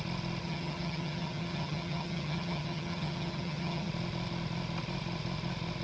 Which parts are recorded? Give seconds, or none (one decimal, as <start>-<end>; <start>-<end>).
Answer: 0.0-0.4; 3.9-5.8